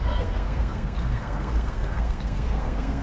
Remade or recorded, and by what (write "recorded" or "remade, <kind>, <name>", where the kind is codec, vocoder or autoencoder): remade, codec, SNAC